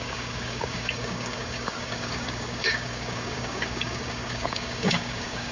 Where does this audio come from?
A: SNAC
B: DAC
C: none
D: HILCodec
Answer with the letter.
B